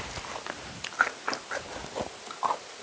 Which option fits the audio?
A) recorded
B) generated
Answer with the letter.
A